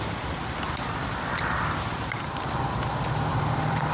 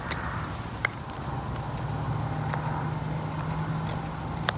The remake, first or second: first